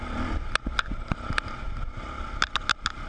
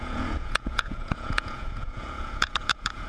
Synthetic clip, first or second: second